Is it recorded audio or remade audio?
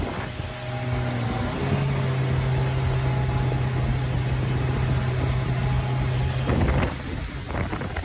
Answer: recorded